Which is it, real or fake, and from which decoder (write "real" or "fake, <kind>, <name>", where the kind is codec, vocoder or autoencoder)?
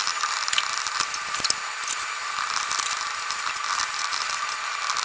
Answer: real